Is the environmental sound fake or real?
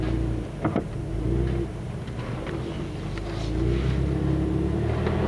real